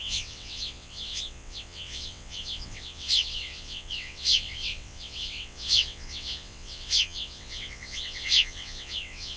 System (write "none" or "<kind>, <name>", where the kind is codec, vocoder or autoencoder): vocoder, WaveNeXt